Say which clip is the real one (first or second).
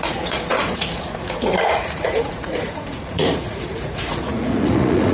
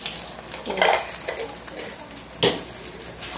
second